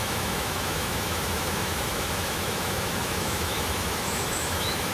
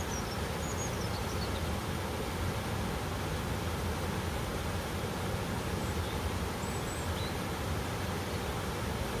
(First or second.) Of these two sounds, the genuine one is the second